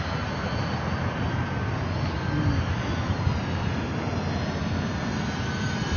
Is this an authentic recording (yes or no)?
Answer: yes